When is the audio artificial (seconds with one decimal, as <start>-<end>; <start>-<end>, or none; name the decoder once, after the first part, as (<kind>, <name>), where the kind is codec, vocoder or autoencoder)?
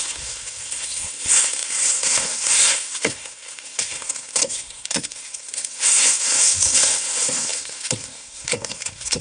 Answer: 0.0-9.2 (codec, SNAC)